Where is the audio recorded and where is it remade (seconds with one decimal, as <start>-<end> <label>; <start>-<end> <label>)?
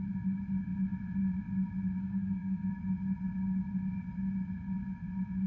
0.0-2.0 recorded; 2.0-2.7 remade; 2.7-5.5 recorded